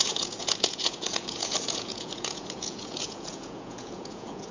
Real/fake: fake